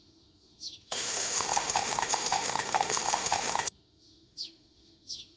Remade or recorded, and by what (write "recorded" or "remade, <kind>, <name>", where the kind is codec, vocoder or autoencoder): remade, autoencoder, DAC-VAE